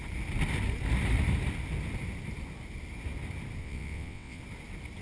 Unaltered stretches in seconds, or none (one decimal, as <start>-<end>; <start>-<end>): 0.0-3.6; 4.4-5.0